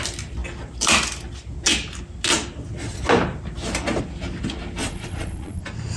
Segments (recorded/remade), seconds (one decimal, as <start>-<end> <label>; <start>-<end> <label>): 0.0-4.8 recorded; 4.8-5.6 remade; 5.6-6.0 recorded